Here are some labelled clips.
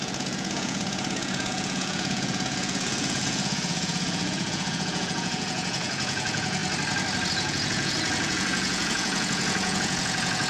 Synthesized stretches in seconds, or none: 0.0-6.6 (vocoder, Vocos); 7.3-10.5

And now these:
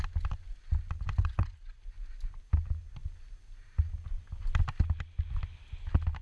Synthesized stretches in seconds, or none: 1.2-1.8 (vocoder, Vocos)

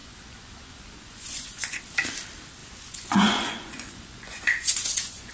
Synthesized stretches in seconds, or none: 0.0-1.8 (vocoder, Vocos); 2.6-5.3

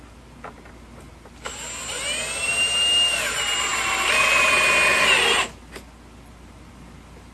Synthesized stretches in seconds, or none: none

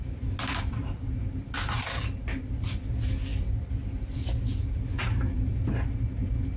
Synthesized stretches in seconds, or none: none

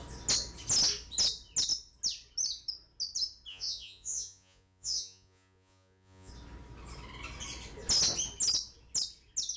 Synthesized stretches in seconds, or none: 3.5-6.3 (vocoder, Vocos)

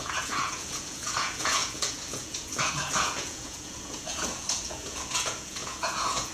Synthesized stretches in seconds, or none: 0.0-6.3 (vocoder, Vocos)